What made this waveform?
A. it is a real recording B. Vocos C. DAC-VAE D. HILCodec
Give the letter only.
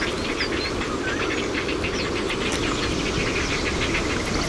A